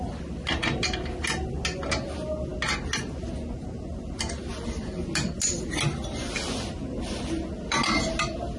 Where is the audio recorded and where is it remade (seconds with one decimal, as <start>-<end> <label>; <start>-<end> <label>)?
0.0-8.6 recorded